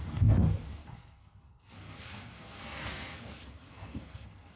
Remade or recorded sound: remade